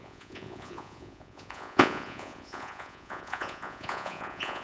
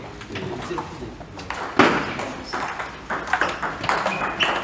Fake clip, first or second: first